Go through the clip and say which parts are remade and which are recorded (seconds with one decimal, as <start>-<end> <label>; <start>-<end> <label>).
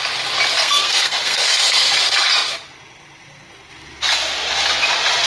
0.0-0.5 recorded; 0.5-1.9 remade; 1.9-5.3 recorded